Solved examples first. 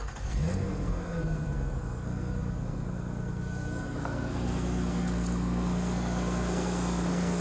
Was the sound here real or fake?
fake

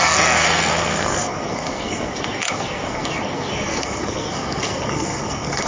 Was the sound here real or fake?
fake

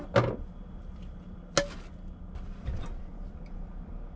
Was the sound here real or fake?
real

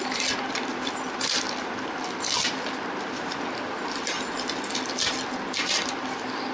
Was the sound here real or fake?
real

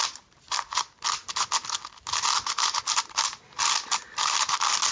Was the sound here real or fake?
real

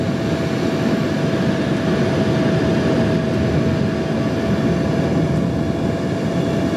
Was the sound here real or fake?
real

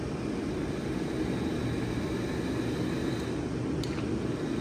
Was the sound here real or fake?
real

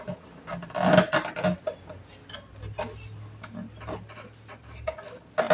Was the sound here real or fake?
real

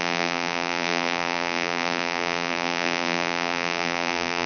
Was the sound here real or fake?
fake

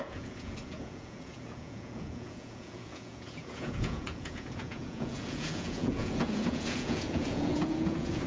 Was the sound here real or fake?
fake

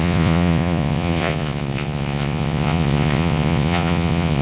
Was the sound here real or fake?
fake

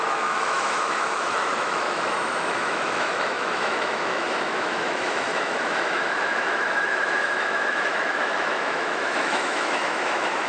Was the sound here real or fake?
fake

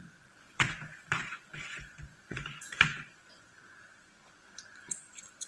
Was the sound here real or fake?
fake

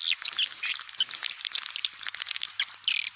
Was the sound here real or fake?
real